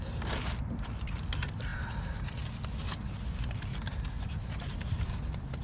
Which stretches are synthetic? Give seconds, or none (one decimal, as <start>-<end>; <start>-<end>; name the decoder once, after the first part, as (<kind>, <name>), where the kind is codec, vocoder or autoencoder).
none